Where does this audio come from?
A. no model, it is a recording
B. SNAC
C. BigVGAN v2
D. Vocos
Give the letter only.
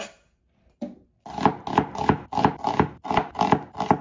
A